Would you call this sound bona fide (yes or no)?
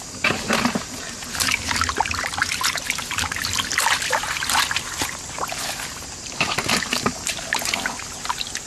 yes